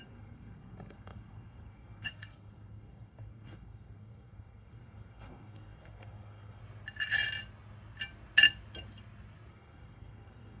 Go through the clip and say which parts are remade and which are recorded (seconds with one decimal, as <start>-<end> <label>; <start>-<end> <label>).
0.0-6.6 remade; 6.6-9.5 recorded; 9.5-10.6 remade